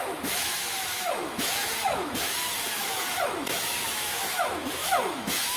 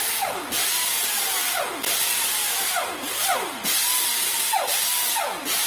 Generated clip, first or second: first